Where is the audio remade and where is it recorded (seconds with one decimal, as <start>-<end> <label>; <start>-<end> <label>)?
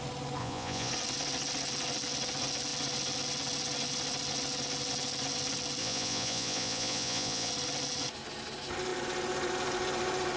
0.0-0.4 recorded; 0.4-0.9 remade; 0.9-5.8 recorded; 5.8-7.5 remade; 7.5-10.4 recorded